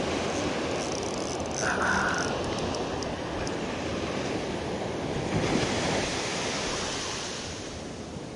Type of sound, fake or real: real